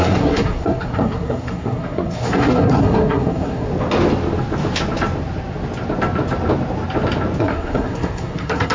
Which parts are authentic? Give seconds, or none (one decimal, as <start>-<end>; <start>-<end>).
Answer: 3.7-7.4

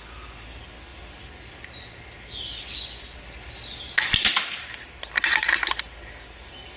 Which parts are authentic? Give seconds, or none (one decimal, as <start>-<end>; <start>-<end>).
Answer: 0.0-6.8

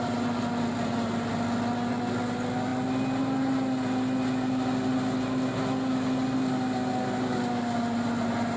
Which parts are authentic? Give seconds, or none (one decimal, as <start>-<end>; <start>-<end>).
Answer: 0.0-8.6

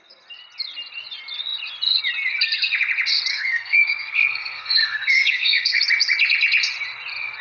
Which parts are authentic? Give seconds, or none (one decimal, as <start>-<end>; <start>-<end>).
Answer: 0.0-3.3; 5.8-7.4

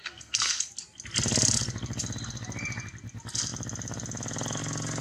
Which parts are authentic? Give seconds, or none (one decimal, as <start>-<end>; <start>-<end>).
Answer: 0.7-5.0

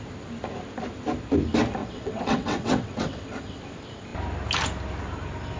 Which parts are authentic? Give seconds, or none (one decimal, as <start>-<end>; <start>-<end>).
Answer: 0.0-1.8; 3.6-5.6

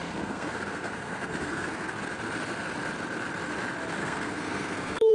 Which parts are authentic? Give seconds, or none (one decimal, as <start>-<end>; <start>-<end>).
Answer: 1.9-4.0